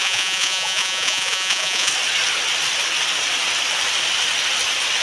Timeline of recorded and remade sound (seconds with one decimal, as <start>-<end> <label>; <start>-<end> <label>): 0.0-1.9 remade; 1.9-5.0 recorded